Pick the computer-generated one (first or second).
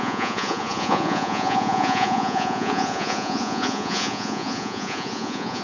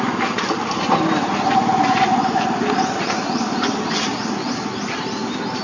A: first